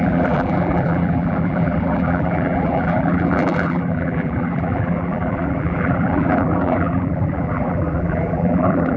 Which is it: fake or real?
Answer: fake